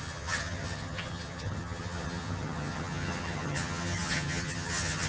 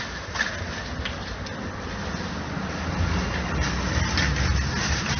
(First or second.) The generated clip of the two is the first